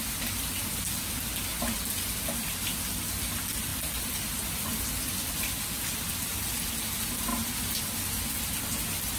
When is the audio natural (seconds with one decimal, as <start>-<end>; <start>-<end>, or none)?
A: 0.0-1.5; 2.2-7.3; 8.3-9.2